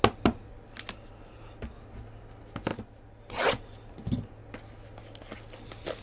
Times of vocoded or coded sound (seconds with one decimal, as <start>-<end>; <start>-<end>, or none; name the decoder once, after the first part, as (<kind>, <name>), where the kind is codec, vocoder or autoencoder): none